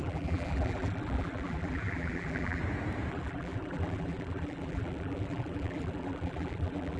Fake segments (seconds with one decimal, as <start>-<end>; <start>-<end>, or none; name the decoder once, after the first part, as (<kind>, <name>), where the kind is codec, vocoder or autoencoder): 0.0-2.6 (vocoder, BigVGAN v2); 3.1-7.0